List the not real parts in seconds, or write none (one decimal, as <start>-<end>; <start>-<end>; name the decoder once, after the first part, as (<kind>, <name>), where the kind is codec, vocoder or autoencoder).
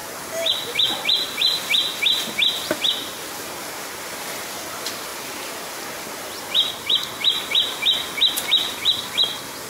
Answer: none